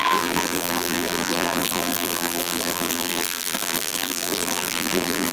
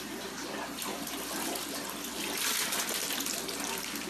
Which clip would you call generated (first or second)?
first